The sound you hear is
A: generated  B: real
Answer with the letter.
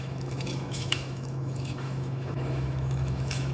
A